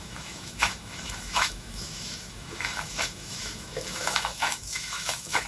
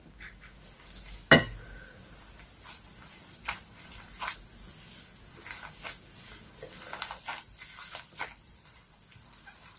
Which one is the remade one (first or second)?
first